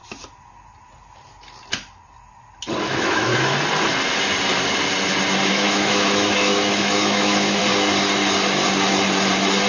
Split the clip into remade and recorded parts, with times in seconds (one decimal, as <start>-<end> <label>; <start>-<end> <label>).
0.0-2.8 recorded; 2.8-3.3 remade; 3.3-5.5 recorded; 5.5-7.6 remade; 7.6-9.7 recorded